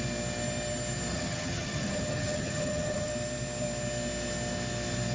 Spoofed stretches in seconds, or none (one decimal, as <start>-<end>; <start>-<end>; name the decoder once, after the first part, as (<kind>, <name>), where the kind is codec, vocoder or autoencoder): 1.1-3.1 (vocoder, HiFi-GAN)